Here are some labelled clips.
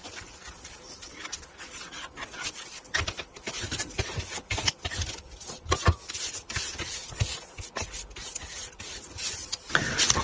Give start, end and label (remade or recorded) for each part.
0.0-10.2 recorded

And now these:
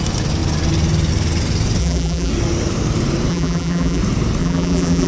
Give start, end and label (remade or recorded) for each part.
0.0-1.8 recorded; 1.8-2.3 remade; 2.3-3.3 recorded; 3.3-4.0 remade; 4.0-4.4 recorded; 4.4-5.1 remade

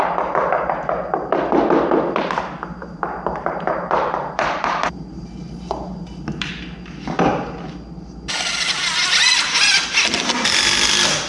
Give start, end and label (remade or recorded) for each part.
0.0-2.8 recorded; 2.8-6.5 remade; 6.5-11.3 recorded

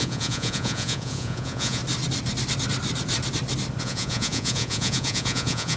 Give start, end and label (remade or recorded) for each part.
0.0-1.8 remade; 1.8-3.8 recorded; 3.8-5.8 remade